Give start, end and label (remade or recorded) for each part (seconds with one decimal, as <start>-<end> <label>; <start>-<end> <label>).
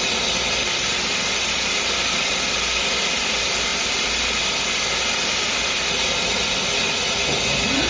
0.0-7.9 recorded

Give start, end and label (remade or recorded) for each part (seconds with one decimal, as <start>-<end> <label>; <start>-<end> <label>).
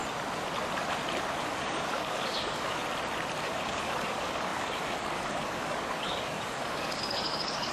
0.0-1.4 recorded; 1.4-2.8 remade; 2.8-3.4 recorded; 3.4-7.7 remade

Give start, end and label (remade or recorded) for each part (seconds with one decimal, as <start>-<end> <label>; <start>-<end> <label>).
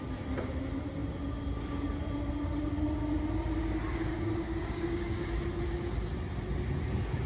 0.0-4.1 recorded; 4.1-5.4 remade; 5.4-7.3 recorded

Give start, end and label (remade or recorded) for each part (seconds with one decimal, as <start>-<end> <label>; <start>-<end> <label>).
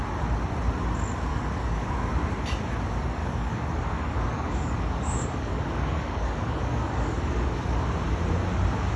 0.0-1.3 recorded; 1.3-1.9 remade; 1.9-3.2 recorded; 3.2-7.8 remade; 7.8-9.0 recorded